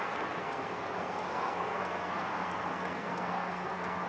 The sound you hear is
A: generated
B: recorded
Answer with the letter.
A